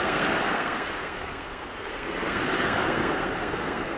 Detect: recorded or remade remade